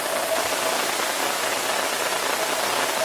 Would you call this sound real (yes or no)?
yes